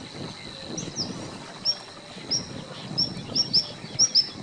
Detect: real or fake real